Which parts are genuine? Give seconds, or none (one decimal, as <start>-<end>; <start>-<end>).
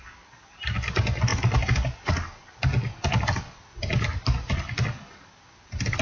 0.0-6.0